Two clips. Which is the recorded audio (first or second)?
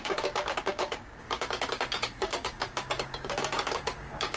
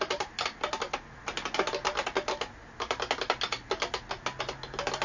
second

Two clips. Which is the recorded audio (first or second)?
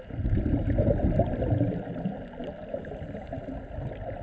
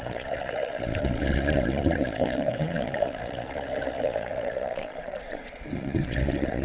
first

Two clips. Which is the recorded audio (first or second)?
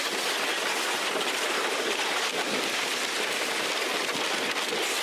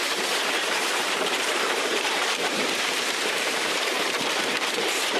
first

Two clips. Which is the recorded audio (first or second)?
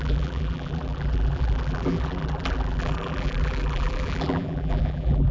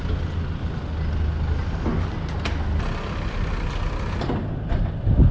second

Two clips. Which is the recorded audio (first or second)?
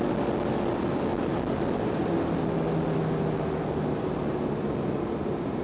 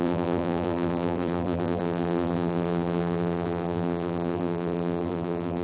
first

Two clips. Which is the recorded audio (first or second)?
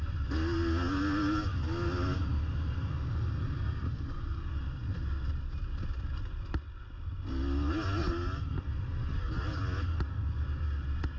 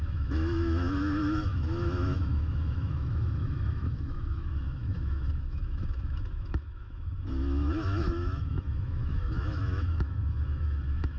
first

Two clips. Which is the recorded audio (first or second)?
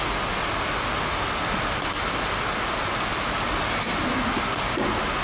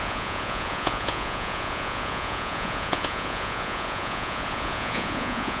first